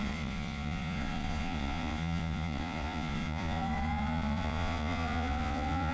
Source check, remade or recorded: remade